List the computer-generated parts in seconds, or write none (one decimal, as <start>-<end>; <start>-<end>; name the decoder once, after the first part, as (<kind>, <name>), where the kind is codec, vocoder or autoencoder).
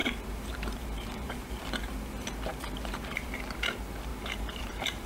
0.0-1.5 (vocoder, BigVGAN v2); 2.5-3.3; 4.1-5.1